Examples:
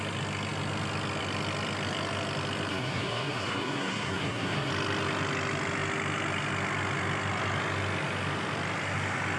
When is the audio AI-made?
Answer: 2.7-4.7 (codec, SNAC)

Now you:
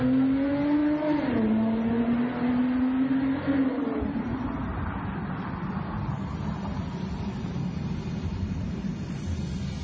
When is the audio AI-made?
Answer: none